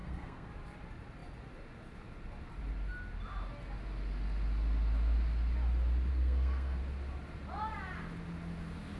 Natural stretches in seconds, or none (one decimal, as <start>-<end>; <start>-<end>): 0.5-6.1; 6.8-9.0